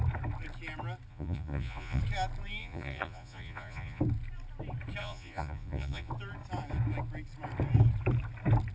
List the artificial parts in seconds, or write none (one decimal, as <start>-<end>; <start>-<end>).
1.1-2.0; 2.6-4.0; 5.0-6.1